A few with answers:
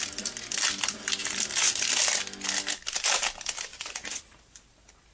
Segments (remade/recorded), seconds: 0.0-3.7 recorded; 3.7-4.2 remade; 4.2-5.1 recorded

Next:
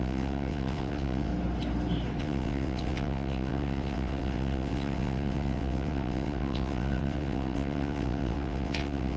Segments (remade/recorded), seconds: 0.0-1.3 remade; 1.3-2.2 recorded; 2.2-9.2 remade

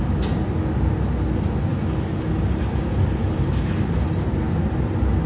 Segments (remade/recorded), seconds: 0.0-5.3 recorded

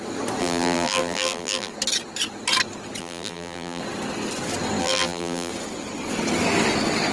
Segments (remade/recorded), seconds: 0.0-0.4 recorded; 0.4-1.7 remade; 1.7-3.0 recorded; 3.0-3.8 remade; 3.8-4.8 recorded; 4.8-5.5 remade; 5.5-7.1 recorded

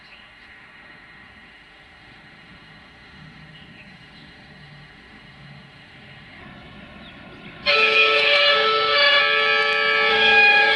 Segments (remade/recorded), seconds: 0.0-6.4 remade; 6.4-7.7 recorded; 7.7-9.2 remade; 9.2-10.1 recorded; 10.1-10.8 remade

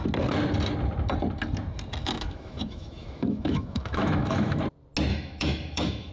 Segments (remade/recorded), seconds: 0.0-2.0 recorded; 2.0-4.6 remade; 4.6-5.1 recorded; 5.1-6.1 remade

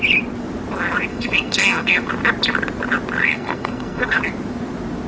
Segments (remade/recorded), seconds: 0.0-1.1 recorded; 1.1-2.1 remade; 2.1-3.2 recorded; 3.2-4.2 remade; 4.2-5.1 recorded

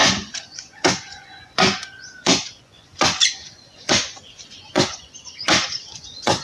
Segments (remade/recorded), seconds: 0.0-6.4 remade